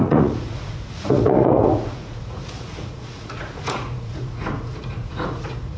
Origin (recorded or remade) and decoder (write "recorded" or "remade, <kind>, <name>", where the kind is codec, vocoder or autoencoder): remade, vocoder, Vocos